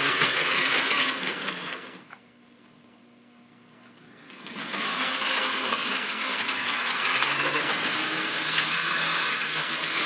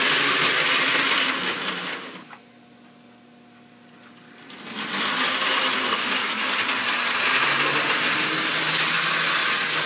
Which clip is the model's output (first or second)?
first